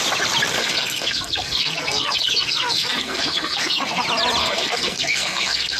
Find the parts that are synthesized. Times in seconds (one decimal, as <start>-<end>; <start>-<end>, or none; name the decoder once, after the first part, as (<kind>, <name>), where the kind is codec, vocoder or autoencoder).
0.5-4.0 (codec, SNAC); 4.4-5.8